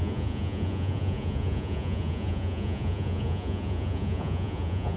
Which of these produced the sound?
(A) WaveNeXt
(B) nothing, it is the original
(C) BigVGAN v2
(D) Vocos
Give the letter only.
D